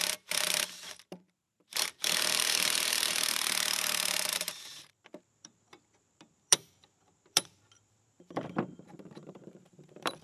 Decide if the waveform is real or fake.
fake